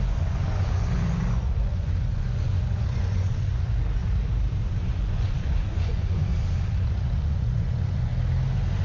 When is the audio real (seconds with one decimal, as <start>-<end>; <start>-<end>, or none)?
4.0-4.9; 6.3-6.9; 8.1-8.8